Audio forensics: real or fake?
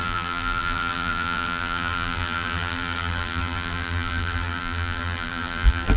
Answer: fake